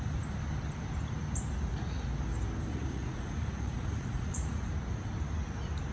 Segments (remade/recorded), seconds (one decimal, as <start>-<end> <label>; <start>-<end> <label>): 0.0-2.7 recorded; 2.7-4.7 remade; 4.7-5.9 recorded